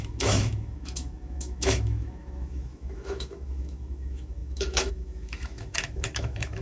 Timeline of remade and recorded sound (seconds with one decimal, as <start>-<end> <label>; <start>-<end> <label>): 0.0-6.6 remade